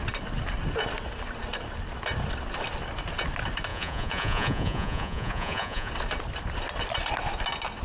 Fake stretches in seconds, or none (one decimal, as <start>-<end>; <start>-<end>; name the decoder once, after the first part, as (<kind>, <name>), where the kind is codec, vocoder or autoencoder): 3.7-5.9 (vocoder, Vocos)